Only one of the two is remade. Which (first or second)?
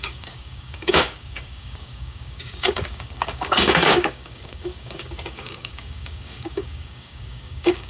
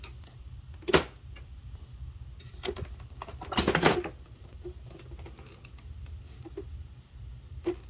first